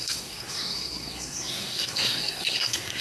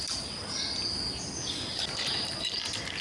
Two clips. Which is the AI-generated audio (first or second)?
first